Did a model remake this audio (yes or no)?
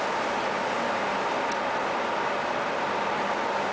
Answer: no